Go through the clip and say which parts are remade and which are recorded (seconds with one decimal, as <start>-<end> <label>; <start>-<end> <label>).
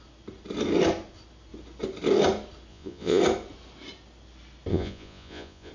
0.0-2.7 recorded; 2.7-3.2 remade; 3.2-4.7 recorded; 4.7-5.7 remade